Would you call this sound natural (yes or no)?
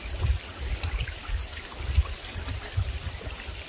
yes